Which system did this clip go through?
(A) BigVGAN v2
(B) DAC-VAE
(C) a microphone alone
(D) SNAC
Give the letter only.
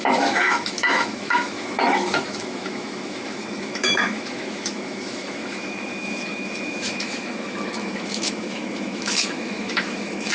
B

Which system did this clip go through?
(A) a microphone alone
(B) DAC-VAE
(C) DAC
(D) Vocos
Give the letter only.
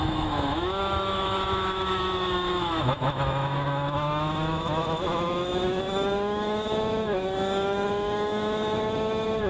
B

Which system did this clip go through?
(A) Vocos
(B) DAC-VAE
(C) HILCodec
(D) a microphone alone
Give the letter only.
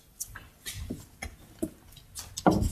D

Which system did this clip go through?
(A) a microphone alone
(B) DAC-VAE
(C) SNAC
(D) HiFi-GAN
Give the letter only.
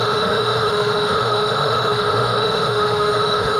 B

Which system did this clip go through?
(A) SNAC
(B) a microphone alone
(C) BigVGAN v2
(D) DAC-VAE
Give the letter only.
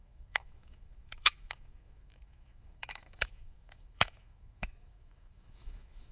D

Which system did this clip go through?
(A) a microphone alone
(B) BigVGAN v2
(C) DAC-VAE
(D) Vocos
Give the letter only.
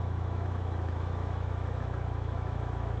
C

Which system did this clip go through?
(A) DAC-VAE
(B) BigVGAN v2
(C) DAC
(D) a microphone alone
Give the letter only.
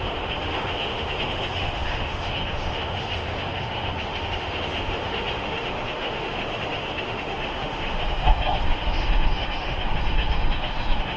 A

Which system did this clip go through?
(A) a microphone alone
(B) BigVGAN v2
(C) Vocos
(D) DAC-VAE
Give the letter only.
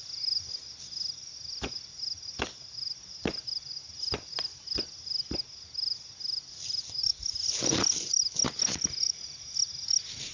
A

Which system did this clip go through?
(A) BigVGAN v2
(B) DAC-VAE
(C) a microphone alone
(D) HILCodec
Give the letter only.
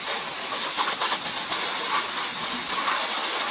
C